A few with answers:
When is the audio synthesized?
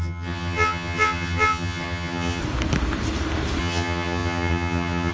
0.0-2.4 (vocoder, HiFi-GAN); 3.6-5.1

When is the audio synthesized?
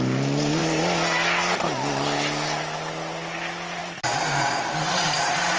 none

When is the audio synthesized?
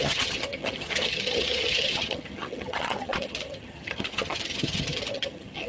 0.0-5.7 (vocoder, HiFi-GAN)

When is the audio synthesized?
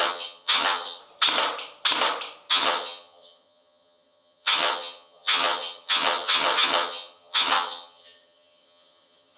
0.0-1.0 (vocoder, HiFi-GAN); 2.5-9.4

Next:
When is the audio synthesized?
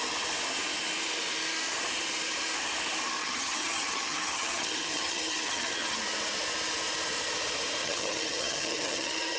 3.2-6.0 (vocoder, HiFi-GAN); 7.8-9.4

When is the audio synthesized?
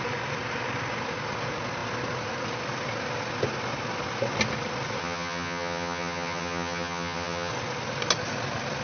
5.0-7.5 (vocoder, HiFi-GAN)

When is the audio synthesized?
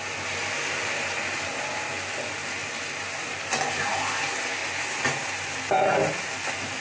none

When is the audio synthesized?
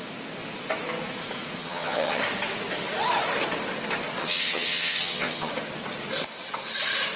1.6-2.2 (vocoder, HiFi-GAN); 4.2-5.5